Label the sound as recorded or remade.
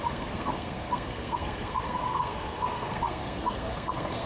remade